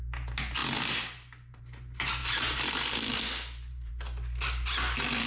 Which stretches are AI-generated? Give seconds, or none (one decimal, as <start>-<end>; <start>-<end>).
2.2-3.9